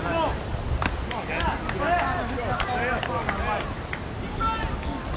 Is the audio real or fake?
real